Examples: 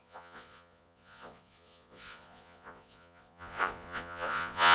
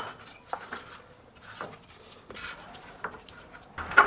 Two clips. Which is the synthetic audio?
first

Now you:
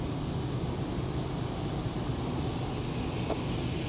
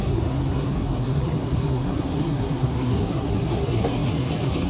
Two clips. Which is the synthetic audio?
second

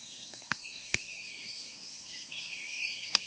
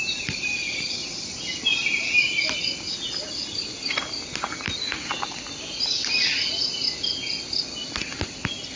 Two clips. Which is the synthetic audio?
first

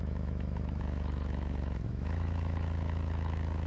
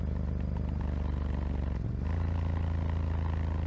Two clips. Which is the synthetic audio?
first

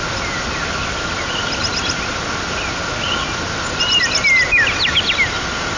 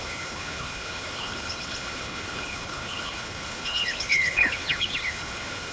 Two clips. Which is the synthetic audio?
second